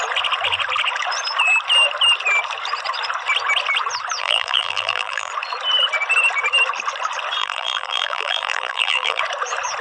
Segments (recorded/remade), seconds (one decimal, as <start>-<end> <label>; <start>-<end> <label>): 0.0-4.2 recorded; 4.2-5.3 remade; 5.3-7.4 recorded; 7.4-9.2 remade; 9.2-9.8 recorded